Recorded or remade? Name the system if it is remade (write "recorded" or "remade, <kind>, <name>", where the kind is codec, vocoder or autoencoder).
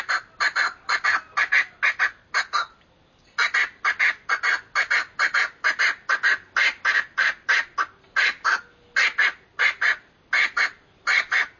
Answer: recorded